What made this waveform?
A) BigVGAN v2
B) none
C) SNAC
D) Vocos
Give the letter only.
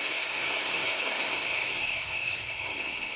C